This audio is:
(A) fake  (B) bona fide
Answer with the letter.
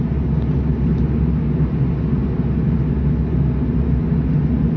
B